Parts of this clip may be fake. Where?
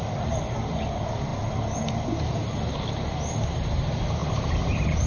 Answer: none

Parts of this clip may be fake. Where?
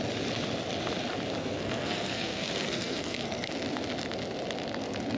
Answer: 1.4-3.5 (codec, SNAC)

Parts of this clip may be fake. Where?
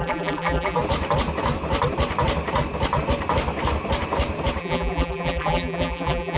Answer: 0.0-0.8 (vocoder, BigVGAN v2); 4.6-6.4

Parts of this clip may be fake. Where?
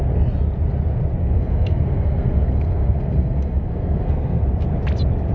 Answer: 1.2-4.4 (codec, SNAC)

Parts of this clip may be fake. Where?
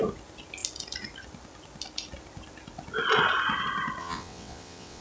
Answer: 4.0-5.0 (vocoder, WaveNeXt)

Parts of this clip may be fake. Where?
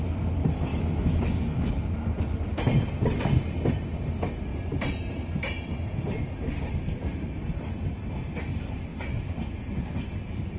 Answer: 0.7-1.7 (autoencoder, DAC-VAE)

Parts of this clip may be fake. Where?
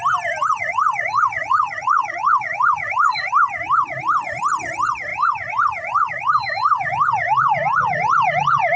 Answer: 0.4-3.2 (vocoder, Vocos)